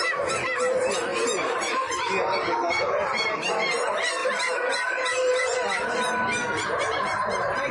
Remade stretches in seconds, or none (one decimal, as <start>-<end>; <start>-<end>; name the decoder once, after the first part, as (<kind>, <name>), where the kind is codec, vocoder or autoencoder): 1.1-3.7 (vocoder, BigVGAN v2); 4.2-5.3; 6.4-7.7